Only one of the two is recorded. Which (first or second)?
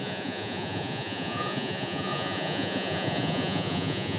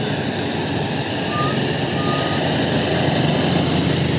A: second